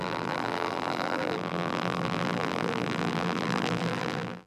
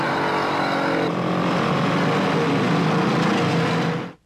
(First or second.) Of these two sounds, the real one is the second